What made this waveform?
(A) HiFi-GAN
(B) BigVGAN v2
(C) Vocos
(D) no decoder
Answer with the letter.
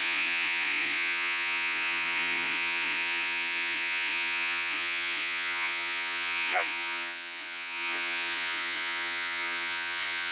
C